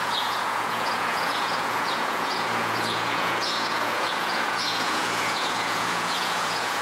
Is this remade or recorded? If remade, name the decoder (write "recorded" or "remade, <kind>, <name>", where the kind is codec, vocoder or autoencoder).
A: remade, vocoder, Vocos